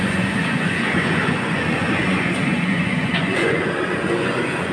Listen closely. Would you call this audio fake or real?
fake